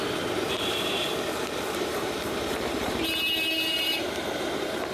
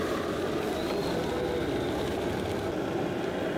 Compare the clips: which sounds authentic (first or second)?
second